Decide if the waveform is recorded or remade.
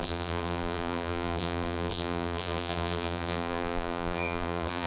remade